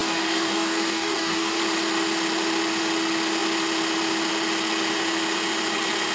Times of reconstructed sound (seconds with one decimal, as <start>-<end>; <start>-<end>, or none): 0.0-1.6